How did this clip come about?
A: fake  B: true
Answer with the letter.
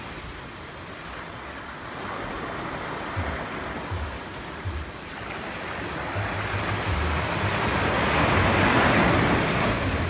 B